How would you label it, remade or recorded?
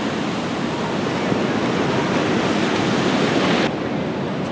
recorded